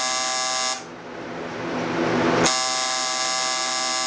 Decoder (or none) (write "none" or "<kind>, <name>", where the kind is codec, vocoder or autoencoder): none